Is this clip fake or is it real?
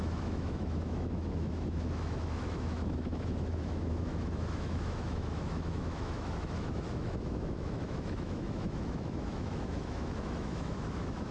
fake